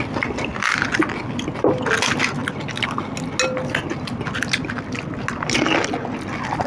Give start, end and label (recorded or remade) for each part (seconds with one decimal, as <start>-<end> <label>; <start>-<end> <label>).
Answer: 0.0-6.7 recorded

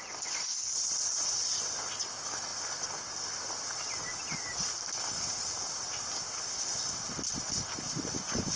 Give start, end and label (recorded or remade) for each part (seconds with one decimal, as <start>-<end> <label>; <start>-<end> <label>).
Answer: 0.0-8.6 recorded

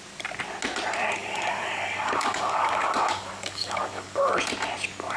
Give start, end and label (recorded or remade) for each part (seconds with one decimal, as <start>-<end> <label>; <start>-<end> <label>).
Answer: 0.0-1.2 recorded; 1.2-4.3 remade; 4.3-5.2 recorded

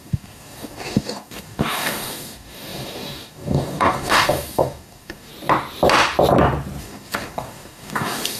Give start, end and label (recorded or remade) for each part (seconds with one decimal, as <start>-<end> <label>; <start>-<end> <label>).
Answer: 0.0-5.3 remade; 5.3-6.8 recorded; 6.8-8.4 remade

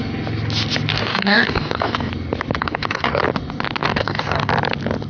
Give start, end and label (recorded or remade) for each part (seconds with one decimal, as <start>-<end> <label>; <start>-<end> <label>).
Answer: 0.0-0.9 recorded; 0.9-2.1 remade; 2.1-2.6 recorded; 2.6-3.2 remade; 3.2-3.8 recorded; 3.8-4.5 remade; 4.5-5.1 recorded

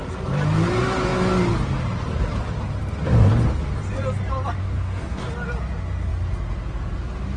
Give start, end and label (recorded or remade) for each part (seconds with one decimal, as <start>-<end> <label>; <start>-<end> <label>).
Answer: 0.0-4.6 recorded; 4.6-5.3 remade; 5.3-7.4 recorded

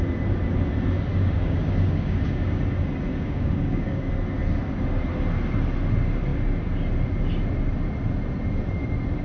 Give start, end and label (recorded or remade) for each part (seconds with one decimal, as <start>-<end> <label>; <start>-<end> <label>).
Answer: 0.0-1.1 recorded; 1.1-2.6 remade; 2.6-3.1 recorded; 3.1-4.1 remade; 4.1-9.2 recorded